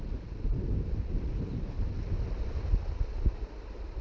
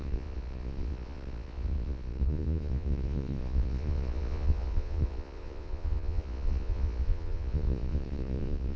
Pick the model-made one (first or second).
second